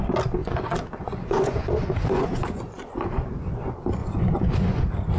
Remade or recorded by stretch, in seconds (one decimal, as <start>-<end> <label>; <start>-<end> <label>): 0.0-0.4 recorded; 0.4-3.5 remade; 3.5-4.0 recorded; 4.0-4.8 remade; 4.8-5.2 recorded